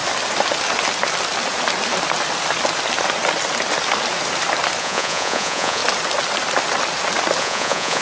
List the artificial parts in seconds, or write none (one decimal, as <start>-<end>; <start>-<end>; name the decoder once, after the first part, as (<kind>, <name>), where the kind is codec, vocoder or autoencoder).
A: 4.8-5.8 (vocoder, Vocos); 7.4-8.0